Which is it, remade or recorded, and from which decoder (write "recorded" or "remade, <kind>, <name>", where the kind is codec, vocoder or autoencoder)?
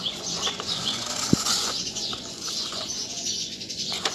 remade, vocoder, Vocos